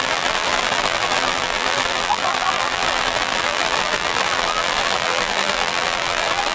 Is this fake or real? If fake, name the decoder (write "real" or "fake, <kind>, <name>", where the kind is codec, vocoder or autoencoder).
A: fake, vocoder, BigVGAN v2